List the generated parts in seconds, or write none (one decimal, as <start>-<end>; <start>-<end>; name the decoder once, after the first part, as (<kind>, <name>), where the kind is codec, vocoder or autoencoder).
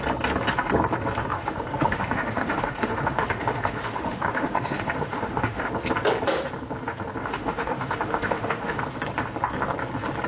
1.3-5.7 (autoencoder, DAC-VAE); 7.2-8.8